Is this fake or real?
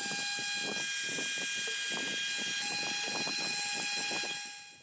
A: real